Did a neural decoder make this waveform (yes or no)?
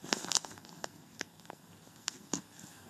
yes